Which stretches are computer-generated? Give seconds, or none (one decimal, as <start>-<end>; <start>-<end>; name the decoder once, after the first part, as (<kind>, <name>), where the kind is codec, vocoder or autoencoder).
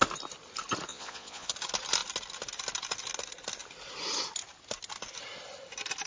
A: 0.9-1.5 (vocoder, Vocos)